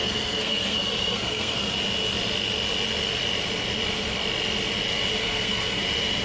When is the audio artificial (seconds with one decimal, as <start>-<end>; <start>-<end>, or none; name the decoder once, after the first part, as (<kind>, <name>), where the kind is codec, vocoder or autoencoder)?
0.0-1.7 (codec, SNAC); 5.2-5.8